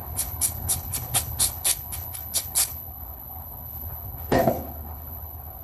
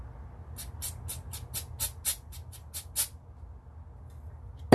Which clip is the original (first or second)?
second